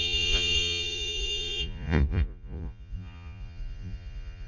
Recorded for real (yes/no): no